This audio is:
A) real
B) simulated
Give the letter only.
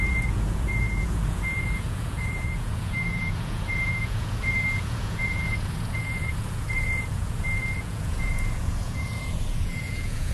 B